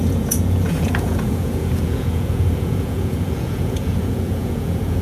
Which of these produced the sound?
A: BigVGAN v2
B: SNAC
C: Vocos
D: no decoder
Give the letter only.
C